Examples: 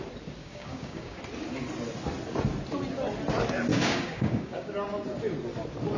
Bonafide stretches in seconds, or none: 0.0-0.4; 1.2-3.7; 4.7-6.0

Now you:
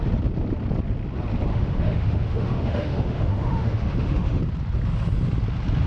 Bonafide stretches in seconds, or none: 0.0-1.5; 4.4-5.9

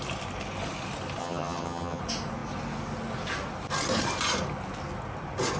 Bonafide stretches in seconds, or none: 0.0-1.2; 2.0-5.6